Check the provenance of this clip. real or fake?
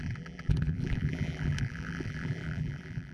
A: fake